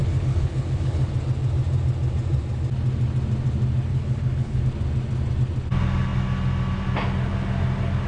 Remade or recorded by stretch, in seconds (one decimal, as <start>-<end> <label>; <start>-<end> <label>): 0.0-1.1 remade; 1.1-3.9 recorded; 3.9-4.6 remade; 4.6-8.1 recorded

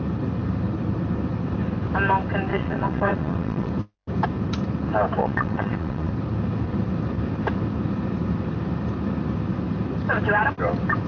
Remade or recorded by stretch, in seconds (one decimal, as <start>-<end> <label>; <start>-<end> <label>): 0.0-2.5 recorded; 2.5-3.7 remade; 3.7-5.2 recorded; 5.2-6.1 remade; 6.1-11.1 recorded

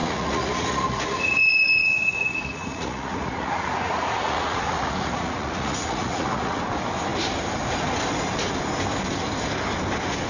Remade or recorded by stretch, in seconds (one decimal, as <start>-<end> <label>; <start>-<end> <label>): 0.0-1.4 remade; 1.4-1.8 recorded; 1.8-6.6 remade; 6.6-10.3 recorded

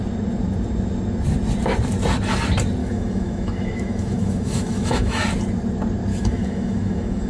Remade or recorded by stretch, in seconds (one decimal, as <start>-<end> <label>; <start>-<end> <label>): 0.0-2.8 recorded; 2.8-5.3 remade; 5.3-6.1 recorded; 6.1-7.3 remade

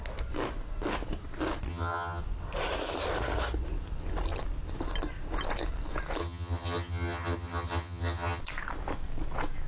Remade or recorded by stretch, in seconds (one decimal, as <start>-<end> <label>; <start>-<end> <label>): 0.0-1.7 recorded; 1.7-2.2 remade; 2.2-6.2 recorded; 6.2-8.4 remade; 8.4-9.7 recorded